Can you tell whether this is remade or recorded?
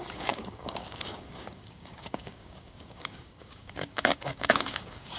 remade